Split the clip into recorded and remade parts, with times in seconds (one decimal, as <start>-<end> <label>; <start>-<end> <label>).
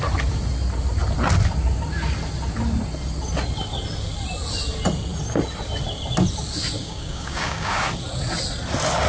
0.0-6.8 recorded; 6.8-7.8 remade; 7.8-9.1 recorded